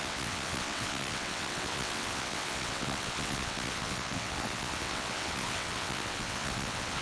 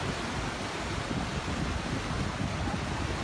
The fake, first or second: first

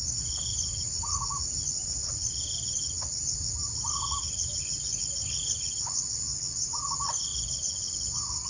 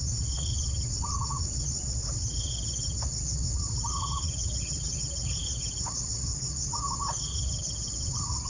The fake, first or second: second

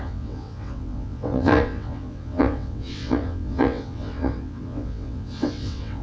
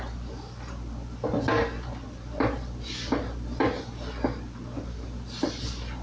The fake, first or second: first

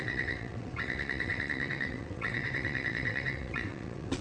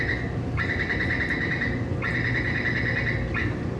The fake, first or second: first